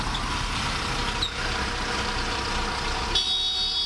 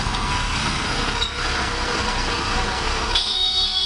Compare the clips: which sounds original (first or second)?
first